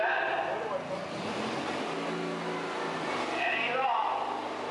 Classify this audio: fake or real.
real